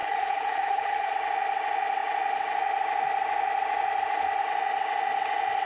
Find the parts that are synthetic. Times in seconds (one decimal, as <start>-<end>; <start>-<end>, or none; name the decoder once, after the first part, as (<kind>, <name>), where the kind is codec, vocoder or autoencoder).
0.0-1.1 (codec, HILCodec)